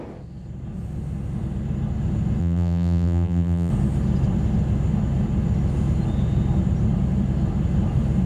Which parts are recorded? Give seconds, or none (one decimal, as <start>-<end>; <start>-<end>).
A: 0.0-2.4; 3.7-8.3